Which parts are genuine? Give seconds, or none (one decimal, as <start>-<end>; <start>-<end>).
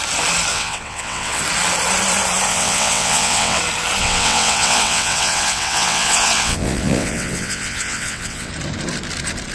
0.0-0.5; 1.4-2.5; 3.6-4.0; 8.5-9.5